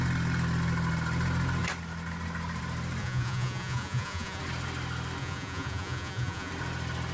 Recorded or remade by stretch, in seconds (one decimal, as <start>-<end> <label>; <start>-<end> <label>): 0.0-3.0 recorded; 3.0-4.4 remade; 4.4-5.2 recorded; 5.2-6.5 remade; 6.5-7.1 recorded